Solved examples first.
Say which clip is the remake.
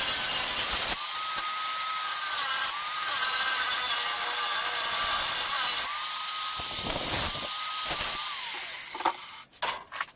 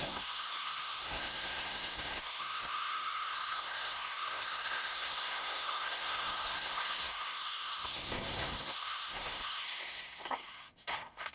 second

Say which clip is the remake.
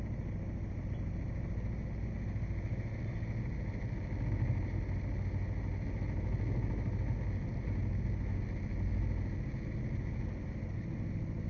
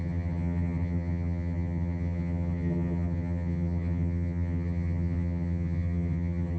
second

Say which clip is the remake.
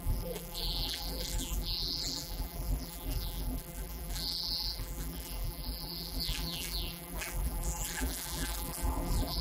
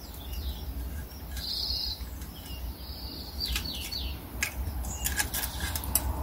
first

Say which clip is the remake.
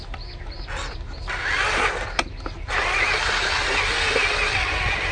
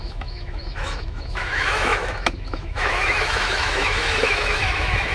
second